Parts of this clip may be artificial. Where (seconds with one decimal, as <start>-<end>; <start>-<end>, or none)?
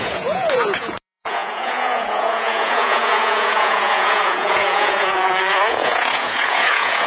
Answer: 0.0-7.1